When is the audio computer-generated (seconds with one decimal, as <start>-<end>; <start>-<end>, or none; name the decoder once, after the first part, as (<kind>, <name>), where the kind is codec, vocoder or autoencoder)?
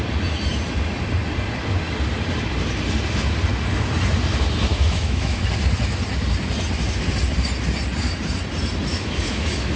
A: 4.7-5.4 (autoencoder, DAC-VAE); 8.9-9.8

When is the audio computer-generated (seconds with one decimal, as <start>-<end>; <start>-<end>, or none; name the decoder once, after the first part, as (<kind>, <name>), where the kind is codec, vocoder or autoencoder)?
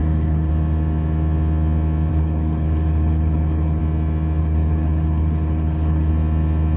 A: 0.0-0.5 (codec, HILCodec); 2.1-3.8; 4.4-6.1